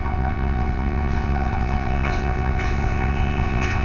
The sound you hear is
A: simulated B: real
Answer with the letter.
A